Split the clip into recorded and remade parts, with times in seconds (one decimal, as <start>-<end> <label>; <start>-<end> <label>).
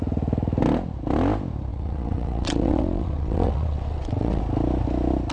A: 0.0-1.7 recorded; 1.7-4.4 remade; 4.4-5.3 recorded